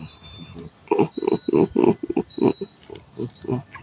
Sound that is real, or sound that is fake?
real